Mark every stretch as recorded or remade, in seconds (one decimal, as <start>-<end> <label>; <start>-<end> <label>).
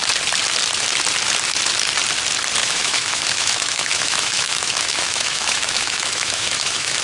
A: 0.0-2.6 recorded; 2.6-7.0 remade